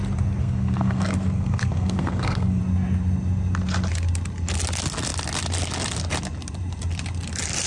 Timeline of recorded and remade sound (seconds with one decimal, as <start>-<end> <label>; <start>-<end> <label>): 0.0-0.4 recorded; 0.4-2.6 remade; 2.6-7.7 recorded